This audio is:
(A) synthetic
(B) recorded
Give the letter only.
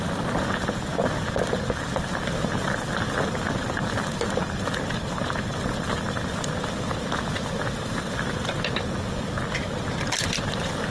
B